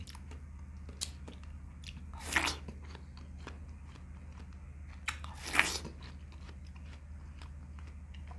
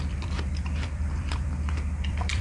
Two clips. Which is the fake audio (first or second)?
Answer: second